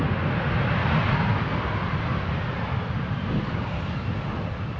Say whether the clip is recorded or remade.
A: recorded